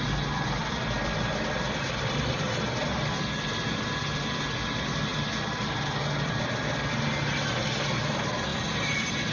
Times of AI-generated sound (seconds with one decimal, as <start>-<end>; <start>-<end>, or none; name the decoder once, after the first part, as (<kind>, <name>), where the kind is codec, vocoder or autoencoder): 0.6-3.0 (vocoder, BigVGAN v2)